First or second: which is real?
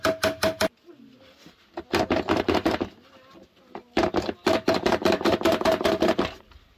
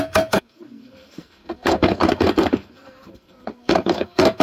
first